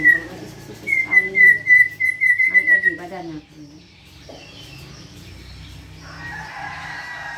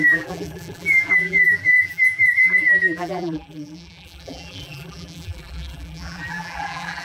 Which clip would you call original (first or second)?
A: first